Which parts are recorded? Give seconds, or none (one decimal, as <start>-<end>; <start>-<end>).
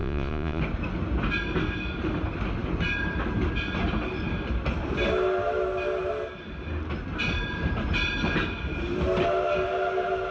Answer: 0.6-10.3